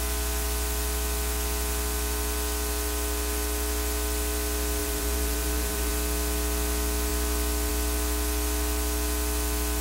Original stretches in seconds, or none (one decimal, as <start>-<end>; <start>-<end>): 0.0-4.8; 5.9-9.8